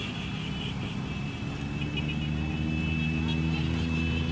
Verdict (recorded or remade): recorded